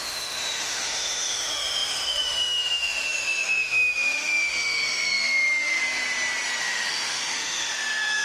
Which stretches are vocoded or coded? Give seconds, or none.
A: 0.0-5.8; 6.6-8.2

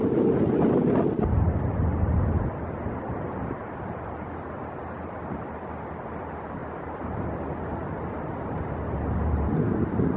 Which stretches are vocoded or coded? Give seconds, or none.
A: none

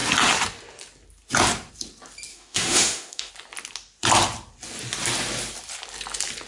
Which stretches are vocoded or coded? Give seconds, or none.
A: 2.3-3.3

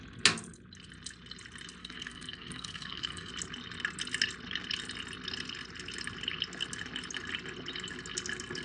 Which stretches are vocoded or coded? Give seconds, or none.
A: 1.8-3.3

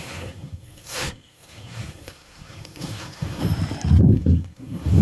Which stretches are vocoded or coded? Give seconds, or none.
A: 0.0-3.4; 4.0-5.0

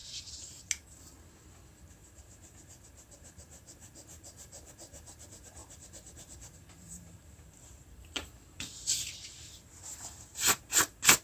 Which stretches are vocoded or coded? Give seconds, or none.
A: 0.0-0.6; 2.0-4.7; 5.6-10.6